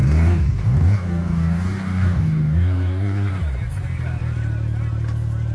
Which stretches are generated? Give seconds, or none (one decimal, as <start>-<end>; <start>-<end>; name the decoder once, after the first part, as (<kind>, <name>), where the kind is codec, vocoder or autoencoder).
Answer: 0.0-3.3 (codec, DAC)